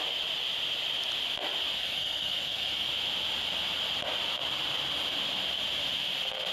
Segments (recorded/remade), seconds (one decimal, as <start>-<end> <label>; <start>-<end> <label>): 0.0-1.7 recorded; 1.7-2.9 remade; 2.9-6.5 recorded